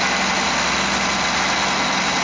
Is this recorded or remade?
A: recorded